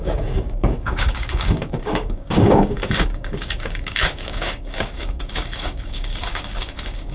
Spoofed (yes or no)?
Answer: yes